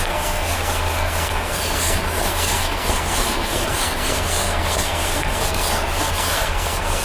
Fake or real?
fake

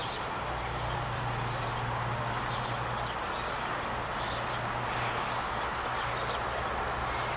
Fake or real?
real